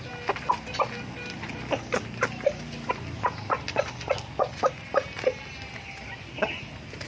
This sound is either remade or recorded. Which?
recorded